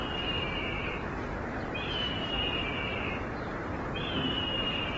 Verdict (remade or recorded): remade